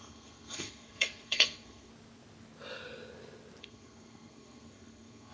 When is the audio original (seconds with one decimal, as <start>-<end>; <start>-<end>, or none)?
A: 1.9-3.6